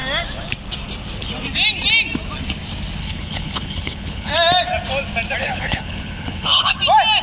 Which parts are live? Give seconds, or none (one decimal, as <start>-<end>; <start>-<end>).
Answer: 0.0-3.0; 4.3-5.4; 6.8-7.2

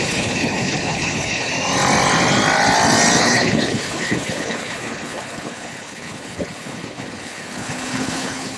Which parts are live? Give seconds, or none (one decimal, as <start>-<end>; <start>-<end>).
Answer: 1.5-3.2

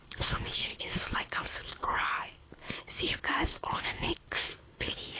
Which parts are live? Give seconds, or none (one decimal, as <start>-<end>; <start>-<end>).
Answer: none

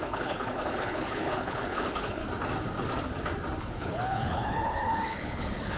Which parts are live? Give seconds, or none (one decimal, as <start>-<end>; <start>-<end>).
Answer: 2.2-3.6

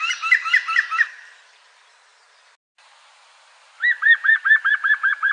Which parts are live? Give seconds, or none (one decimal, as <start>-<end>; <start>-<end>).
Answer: 0.0-5.3

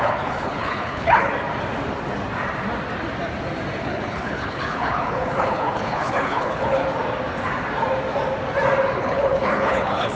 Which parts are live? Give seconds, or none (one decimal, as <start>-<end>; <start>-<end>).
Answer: 1.3-3.8; 6.8-9.0

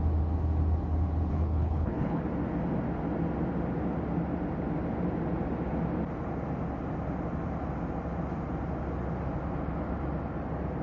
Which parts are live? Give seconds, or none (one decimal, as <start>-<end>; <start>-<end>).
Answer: 0.0-1.3; 2.2-10.8